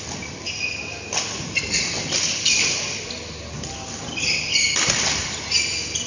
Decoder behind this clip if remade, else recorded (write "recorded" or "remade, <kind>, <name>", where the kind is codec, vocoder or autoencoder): recorded